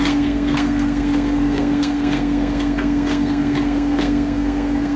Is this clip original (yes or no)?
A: no